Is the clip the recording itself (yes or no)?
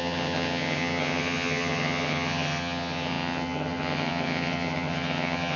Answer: no